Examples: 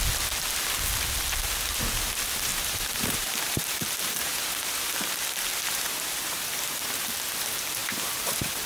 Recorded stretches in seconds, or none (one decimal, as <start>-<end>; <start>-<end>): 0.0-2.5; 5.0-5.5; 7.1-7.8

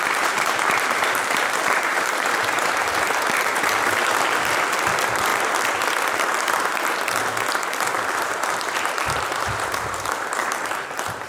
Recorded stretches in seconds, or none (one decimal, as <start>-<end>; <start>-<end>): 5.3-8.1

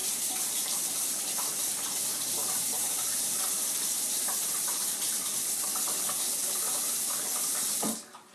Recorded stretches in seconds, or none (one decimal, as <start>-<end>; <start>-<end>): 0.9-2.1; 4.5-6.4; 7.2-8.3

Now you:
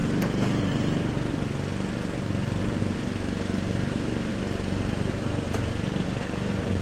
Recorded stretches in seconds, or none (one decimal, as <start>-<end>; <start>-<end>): 0.0-2.8

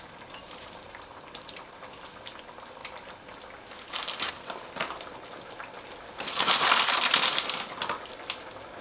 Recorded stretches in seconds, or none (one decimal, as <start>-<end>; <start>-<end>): 2.8-4.3